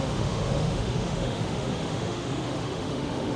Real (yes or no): no